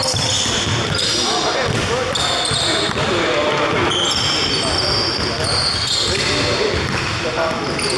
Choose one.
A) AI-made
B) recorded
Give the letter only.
B